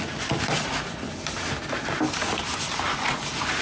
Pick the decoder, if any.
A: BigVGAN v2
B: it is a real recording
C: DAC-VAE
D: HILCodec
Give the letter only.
B